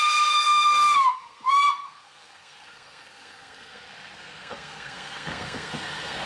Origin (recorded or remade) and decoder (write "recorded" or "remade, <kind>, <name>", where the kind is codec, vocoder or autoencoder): remade, codec, SNAC